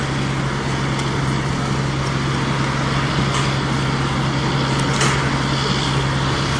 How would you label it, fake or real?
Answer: real